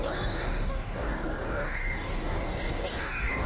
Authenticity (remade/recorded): remade